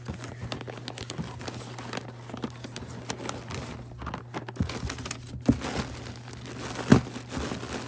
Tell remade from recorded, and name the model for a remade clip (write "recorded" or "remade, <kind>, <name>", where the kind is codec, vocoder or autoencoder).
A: recorded